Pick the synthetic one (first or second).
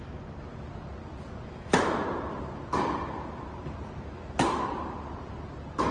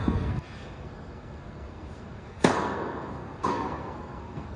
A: second